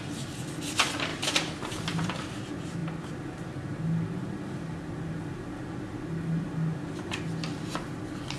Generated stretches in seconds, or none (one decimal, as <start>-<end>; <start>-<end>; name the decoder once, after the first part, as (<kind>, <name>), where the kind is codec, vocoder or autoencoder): none